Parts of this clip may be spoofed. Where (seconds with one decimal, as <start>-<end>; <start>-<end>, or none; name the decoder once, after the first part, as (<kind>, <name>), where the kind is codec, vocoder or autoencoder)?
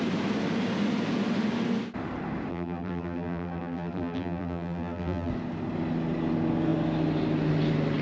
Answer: 2.5-5.3 (vocoder, BigVGAN v2)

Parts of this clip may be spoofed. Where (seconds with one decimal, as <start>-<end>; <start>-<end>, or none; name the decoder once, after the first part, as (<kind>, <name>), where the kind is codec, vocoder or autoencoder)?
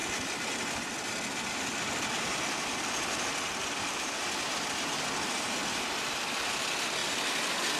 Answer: none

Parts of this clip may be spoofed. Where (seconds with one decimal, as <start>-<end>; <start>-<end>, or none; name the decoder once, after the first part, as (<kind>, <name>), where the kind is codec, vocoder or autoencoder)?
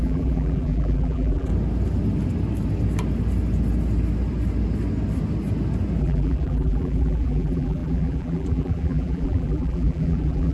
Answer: 0.0-1.5 (vocoder, BigVGAN v2); 6.0-10.5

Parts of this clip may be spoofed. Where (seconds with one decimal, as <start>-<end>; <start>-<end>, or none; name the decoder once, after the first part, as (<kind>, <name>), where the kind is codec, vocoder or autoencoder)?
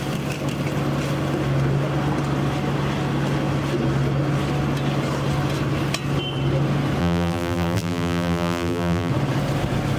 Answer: 7.0-9.1 (vocoder, BigVGAN v2)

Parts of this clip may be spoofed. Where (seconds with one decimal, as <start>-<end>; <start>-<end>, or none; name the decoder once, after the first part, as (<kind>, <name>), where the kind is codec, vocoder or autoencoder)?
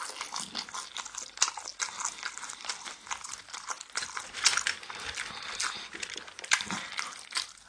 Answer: none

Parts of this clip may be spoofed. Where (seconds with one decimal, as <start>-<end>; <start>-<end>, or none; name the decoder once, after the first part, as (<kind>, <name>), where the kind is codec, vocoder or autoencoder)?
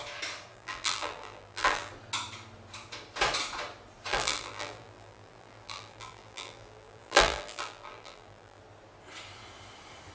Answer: 0.5-1.9 (vocoder, BigVGAN v2); 4.1-8.6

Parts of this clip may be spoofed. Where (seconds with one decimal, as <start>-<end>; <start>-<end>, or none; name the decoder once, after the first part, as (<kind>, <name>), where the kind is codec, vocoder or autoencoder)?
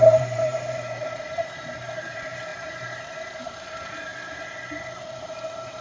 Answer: 0.0-4.1 (vocoder, BigVGAN v2); 5.2-5.8